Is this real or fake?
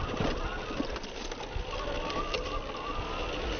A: real